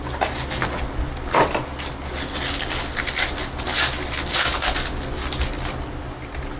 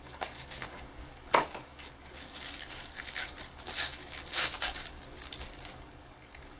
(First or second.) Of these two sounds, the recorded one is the first